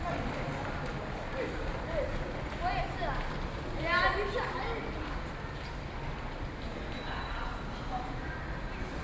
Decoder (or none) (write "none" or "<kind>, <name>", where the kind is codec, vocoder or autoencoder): none